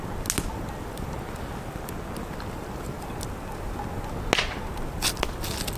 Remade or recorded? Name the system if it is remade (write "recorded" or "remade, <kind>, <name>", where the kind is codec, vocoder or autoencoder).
recorded